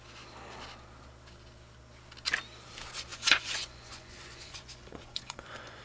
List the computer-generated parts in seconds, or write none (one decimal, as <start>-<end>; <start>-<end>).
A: 3.1-5.8